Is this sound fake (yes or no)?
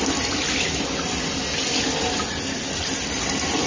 no